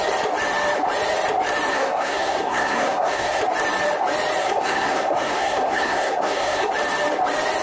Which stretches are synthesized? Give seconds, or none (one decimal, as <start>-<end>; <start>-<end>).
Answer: 1.7-3.4; 4.4-6.7